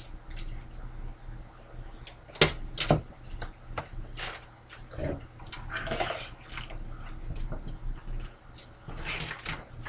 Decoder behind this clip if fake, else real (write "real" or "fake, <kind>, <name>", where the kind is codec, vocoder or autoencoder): real